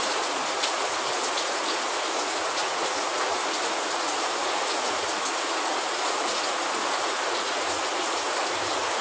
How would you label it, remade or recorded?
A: remade